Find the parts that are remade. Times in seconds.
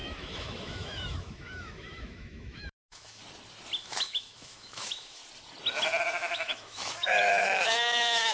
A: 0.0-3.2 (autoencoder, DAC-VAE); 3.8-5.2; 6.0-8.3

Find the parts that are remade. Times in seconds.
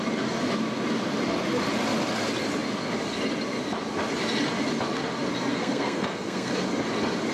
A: 5.5-6.5 (codec, SNAC)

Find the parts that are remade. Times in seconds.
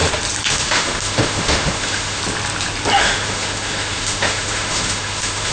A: 0.5-2.2 (autoencoder, DAC-VAE); 3.0-5.5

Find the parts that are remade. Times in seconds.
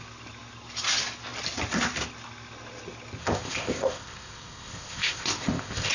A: 3.2-5.9 (codec, ZipCodec)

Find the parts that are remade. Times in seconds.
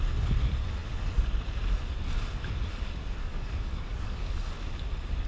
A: 3.2-4.3 (codec, DAC)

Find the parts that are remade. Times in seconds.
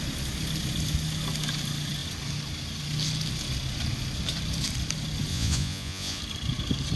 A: 5.3-6.2 (vocoder, Vocos)